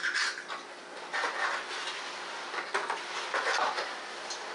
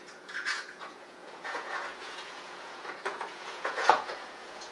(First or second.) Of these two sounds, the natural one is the first